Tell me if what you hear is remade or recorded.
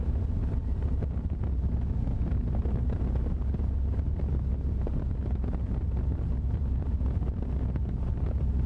recorded